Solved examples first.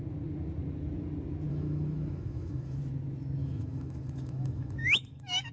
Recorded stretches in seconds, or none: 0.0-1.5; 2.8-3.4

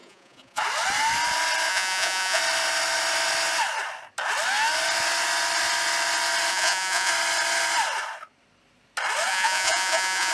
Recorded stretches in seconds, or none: 0.6-1.7; 2.4-6.5; 7.1-9.3

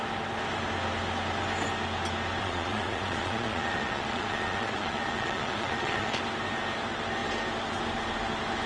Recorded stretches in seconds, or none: 0.0-2.4; 6.2-8.7